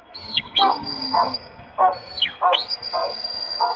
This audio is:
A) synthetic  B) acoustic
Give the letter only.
A